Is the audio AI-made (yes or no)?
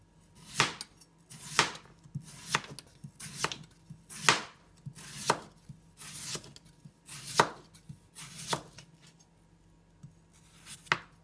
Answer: no